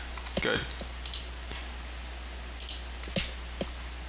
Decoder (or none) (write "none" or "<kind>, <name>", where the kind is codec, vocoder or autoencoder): none